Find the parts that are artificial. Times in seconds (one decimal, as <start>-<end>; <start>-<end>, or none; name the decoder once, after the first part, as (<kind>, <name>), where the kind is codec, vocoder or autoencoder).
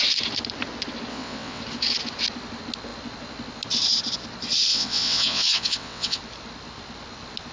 1.1-1.6 (vocoder, WaveNeXt); 4.7-6.2